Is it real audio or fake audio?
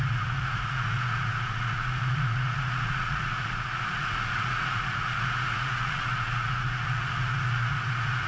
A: fake